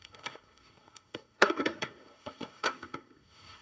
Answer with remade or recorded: remade